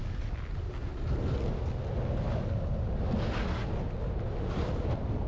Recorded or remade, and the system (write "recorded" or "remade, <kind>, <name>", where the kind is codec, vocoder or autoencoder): recorded